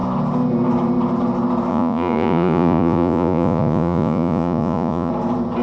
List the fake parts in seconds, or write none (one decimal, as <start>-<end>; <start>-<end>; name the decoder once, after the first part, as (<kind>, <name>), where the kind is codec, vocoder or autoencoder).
1.7-5.1 (vocoder, Vocos)